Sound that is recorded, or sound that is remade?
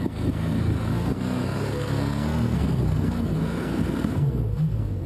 remade